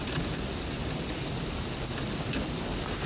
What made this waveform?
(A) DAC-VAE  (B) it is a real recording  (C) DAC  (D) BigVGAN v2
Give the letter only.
B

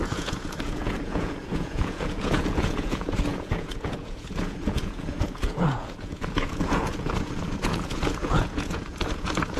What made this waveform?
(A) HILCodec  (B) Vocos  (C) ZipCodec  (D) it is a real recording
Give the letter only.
B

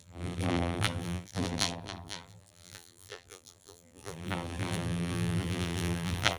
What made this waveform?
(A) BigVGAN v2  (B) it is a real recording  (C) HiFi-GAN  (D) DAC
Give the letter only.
A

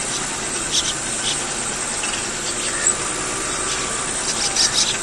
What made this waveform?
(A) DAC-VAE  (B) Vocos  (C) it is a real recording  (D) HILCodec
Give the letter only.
C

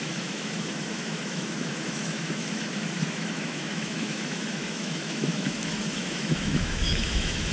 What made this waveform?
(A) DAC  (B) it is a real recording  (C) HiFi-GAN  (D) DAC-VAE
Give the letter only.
D